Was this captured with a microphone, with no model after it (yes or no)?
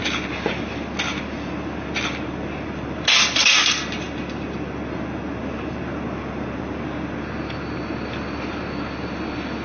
yes